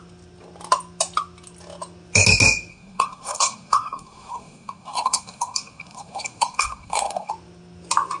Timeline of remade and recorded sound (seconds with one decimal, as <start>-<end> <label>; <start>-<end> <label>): 0.0-2.7 recorded; 2.7-7.3 remade; 7.3-8.2 recorded